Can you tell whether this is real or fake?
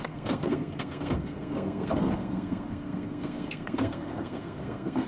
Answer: fake